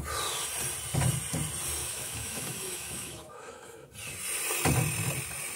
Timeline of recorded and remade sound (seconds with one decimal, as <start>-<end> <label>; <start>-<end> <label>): 0.0-1.8 recorded; 1.8-3.9 remade; 3.9-5.6 recorded